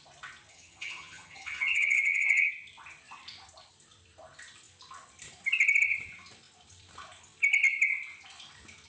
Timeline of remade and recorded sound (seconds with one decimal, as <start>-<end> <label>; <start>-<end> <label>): 0.0-0.5 recorded; 0.5-2.5 remade; 2.5-8.9 recorded